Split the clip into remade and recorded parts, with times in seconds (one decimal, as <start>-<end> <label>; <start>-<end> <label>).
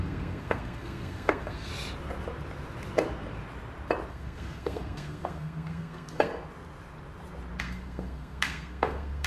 0.0-1.7 remade; 1.7-4.1 recorded; 4.1-6.3 remade; 6.3-7.6 recorded; 7.6-9.3 remade